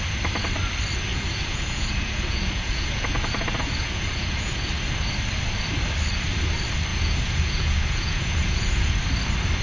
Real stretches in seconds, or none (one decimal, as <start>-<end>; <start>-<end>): 0.0-1.1; 4.7-6.9; 8.9-9.6